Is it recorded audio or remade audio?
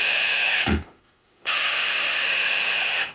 remade